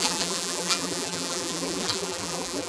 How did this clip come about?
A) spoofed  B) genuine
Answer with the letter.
A